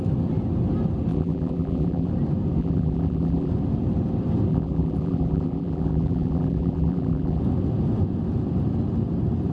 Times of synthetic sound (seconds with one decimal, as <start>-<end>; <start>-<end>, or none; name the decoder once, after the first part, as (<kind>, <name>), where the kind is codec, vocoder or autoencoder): 1.1-2.1 (vocoder, BigVGAN v2); 2.6-3.5; 4.5-7.4